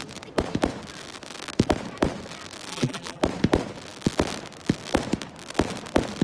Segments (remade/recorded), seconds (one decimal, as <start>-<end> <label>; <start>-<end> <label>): 0.0-2.7 recorded; 2.7-3.2 remade; 3.2-6.2 recorded